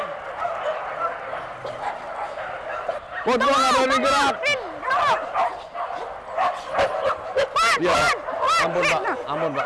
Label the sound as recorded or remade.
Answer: recorded